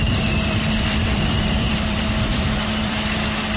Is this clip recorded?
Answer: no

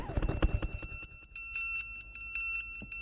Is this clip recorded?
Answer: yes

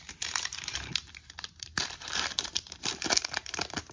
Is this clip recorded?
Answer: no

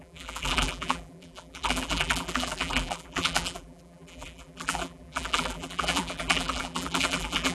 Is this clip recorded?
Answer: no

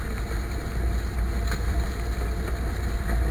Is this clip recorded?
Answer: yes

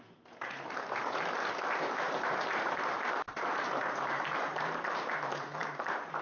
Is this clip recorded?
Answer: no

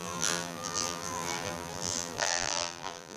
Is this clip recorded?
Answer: no